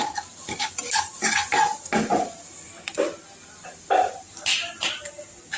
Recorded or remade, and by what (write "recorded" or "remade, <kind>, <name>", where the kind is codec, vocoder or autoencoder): recorded